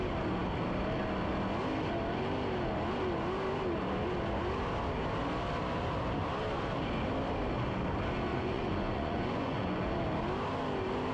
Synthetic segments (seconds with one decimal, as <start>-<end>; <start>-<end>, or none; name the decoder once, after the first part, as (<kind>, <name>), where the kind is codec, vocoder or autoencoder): 8.3-10.0 (vocoder, Vocos)